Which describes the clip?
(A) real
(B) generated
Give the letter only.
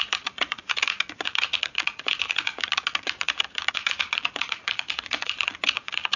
B